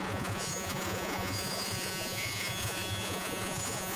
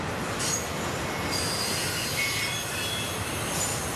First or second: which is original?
second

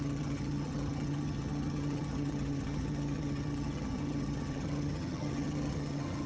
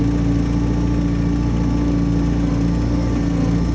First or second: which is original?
second